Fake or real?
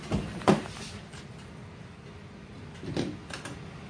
real